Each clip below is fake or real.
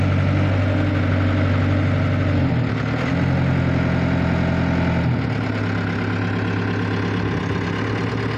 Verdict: real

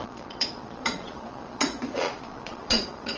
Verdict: fake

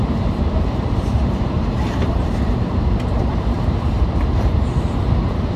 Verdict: fake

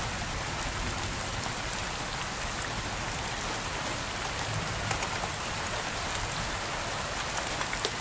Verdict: real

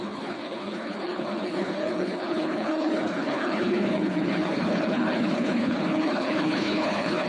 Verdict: fake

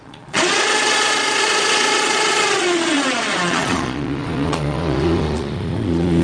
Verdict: fake